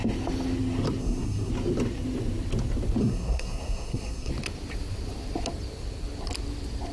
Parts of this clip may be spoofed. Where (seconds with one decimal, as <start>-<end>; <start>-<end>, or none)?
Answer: 1.0-1.5; 3.0-4.3